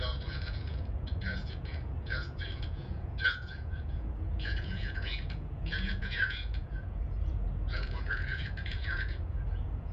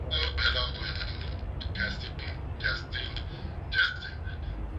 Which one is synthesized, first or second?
first